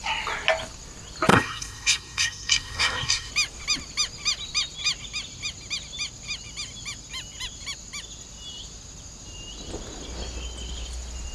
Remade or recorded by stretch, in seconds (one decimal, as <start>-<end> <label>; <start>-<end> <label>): 0.0-1.3 recorded; 1.3-3.3 remade; 3.3-11.3 recorded